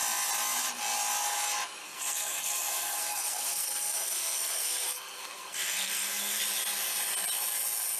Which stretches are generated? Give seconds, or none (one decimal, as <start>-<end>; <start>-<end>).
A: 1.8-6.4